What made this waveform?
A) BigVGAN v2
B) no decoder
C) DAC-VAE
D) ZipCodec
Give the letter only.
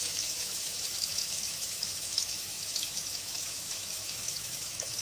C